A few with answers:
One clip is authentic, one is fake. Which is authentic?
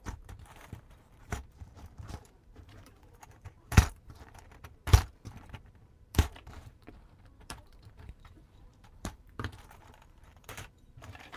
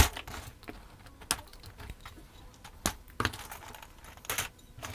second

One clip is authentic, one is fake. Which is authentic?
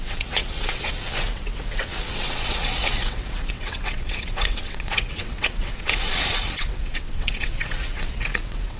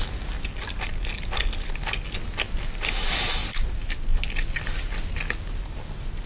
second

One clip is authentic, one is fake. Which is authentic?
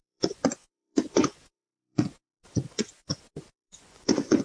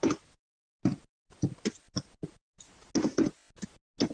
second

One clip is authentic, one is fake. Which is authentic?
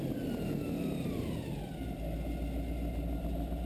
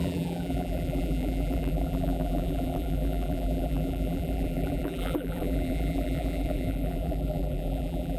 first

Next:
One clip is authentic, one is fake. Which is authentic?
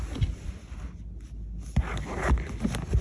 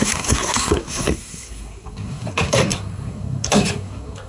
first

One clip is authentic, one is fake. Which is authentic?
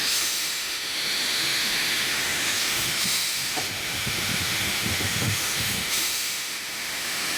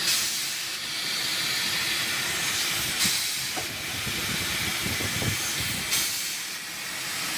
second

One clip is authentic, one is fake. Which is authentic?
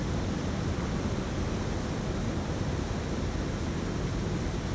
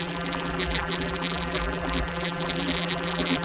first